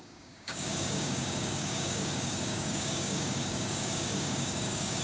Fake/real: fake